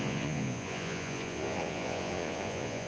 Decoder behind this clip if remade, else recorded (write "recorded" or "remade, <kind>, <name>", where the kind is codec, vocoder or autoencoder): remade, vocoder, Vocos